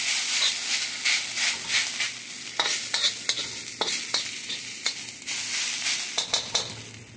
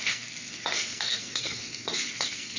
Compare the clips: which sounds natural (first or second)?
first